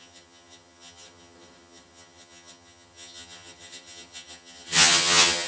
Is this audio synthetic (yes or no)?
yes